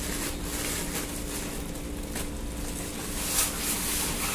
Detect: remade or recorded recorded